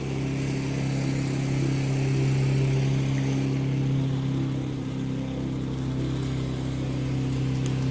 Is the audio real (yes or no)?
yes